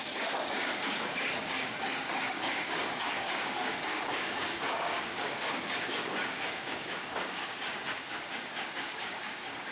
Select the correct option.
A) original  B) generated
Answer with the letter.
B